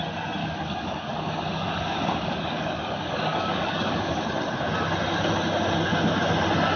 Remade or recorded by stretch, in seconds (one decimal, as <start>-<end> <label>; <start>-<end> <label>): 0.0-0.4 recorded; 0.4-4.2 remade; 4.2-6.8 recorded